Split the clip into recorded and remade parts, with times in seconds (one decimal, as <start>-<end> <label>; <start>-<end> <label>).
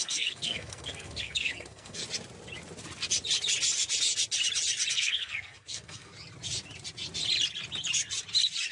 0.0-2.0 remade; 2.0-4.9 recorded; 4.9-6.1 remade; 6.1-8.7 recorded